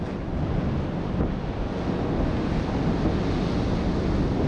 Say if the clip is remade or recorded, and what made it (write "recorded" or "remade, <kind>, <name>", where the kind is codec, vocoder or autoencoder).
recorded